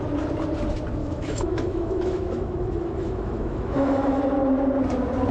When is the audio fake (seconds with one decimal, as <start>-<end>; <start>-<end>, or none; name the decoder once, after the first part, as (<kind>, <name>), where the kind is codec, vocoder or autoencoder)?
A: 1.0-4.2 (autoencoder, DAC-VAE)